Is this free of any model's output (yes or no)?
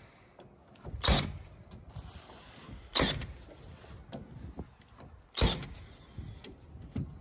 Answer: yes